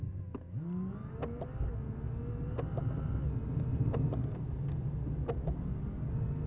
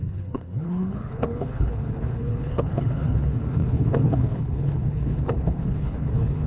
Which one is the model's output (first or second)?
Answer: second